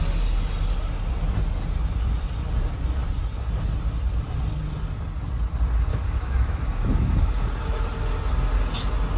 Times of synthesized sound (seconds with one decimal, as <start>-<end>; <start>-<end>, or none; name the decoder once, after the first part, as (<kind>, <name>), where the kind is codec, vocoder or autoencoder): 5.9-7.5 (autoencoder, DAC-VAE)